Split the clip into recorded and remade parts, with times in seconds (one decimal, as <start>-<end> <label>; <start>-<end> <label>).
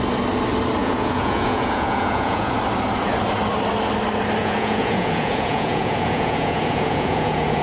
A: 0.0-0.8 recorded; 0.8-2.5 remade; 2.5-4.4 recorded; 4.4-7.6 remade